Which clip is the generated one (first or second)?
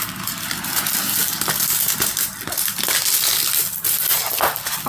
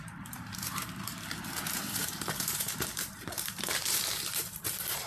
second